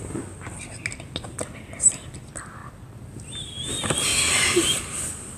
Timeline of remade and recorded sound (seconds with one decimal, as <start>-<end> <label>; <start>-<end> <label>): 0.0-5.4 recorded